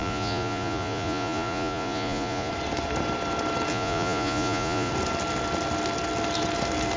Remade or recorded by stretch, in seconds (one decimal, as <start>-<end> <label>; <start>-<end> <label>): 0.0-2.5 remade; 2.5-3.7 recorded; 3.7-4.9 remade; 4.9-7.0 recorded